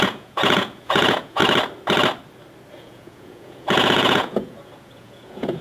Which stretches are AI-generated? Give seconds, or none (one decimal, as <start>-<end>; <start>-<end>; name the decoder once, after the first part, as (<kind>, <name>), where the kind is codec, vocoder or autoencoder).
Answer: 0.0-1.4 (vocoder, Vocos); 2.7-5.6